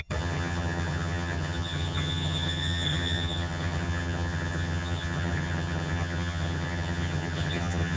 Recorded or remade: remade